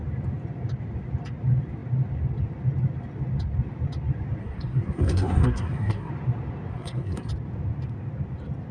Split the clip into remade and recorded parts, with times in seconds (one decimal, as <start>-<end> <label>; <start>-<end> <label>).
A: 0.0-4.4 recorded; 4.4-6.1 remade; 6.1-6.7 recorded; 6.7-7.3 remade; 7.3-8.7 recorded